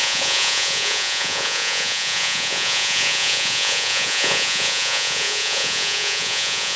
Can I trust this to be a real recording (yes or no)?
no